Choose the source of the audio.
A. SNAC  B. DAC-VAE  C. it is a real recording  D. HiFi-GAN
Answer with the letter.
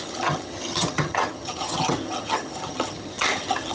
D